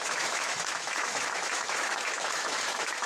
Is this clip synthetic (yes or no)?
yes